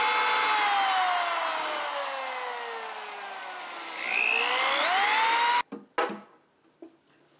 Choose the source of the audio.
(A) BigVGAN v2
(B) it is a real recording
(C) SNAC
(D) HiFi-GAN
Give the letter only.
B